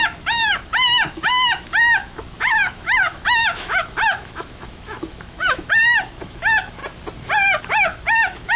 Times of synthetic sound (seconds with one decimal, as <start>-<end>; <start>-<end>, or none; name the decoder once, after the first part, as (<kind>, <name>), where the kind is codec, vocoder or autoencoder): 0.0-6.8 (autoencoder, DAC-VAE); 7.6-8.6